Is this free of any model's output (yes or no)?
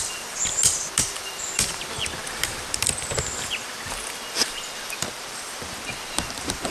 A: no